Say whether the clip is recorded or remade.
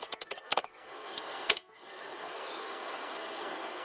remade